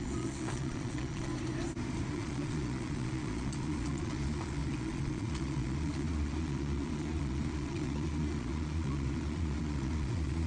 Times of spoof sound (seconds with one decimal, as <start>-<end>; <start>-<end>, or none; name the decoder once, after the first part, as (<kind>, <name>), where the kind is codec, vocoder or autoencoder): 0.0-1.3 (vocoder, Vocos); 2.1-10.5